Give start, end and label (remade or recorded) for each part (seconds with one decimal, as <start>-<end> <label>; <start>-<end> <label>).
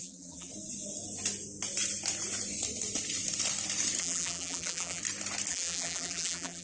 0.0-0.5 remade; 0.5-4.0 recorded; 4.0-5.0 remade; 5.0-5.5 recorded; 5.5-6.6 remade